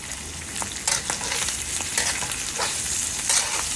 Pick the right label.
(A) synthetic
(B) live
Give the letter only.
B